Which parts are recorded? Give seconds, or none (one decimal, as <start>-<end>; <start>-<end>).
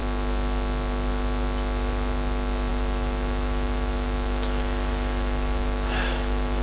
0.0-2.7